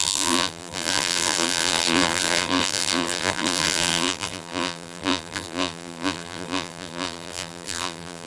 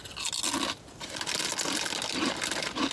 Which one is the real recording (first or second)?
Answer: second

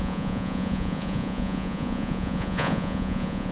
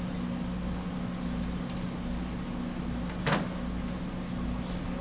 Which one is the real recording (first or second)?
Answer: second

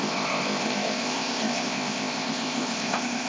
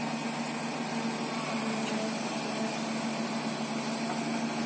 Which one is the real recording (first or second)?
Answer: second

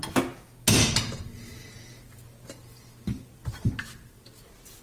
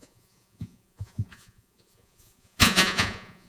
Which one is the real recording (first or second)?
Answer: first